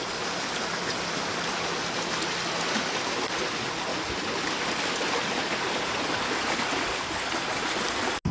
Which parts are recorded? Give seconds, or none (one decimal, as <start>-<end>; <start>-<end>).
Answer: 0.0-8.3